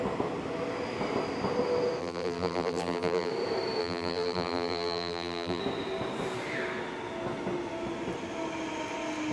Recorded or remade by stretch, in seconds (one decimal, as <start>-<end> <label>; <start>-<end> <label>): 0.0-2.0 recorded; 2.0-3.3 remade; 3.3-3.8 recorded; 3.8-5.6 remade; 5.6-9.3 recorded